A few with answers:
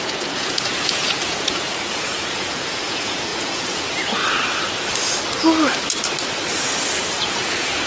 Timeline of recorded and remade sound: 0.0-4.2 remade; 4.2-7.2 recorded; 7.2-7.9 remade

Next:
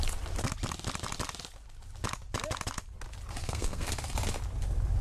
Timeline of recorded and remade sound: 0.0-3.4 recorded; 3.4-3.9 remade; 3.9-5.0 recorded

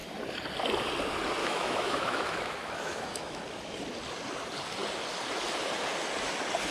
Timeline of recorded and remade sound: 0.0-1.4 recorded; 1.4-3.4 remade; 3.4-6.7 recorded

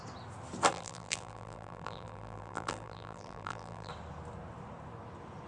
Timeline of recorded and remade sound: 0.0-0.7 recorded; 0.7-3.9 remade; 3.9-5.5 recorded

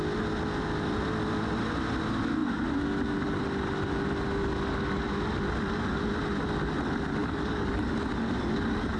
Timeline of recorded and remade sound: 0.0-7.2 recorded; 7.2-7.9 remade; 7.9-9.0 recorded

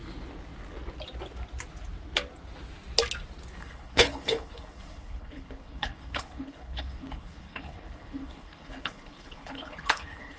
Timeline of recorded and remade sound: 0.0-3.6 recorded; 3.6-10.4 remade